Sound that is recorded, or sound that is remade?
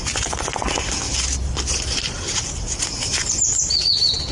recorded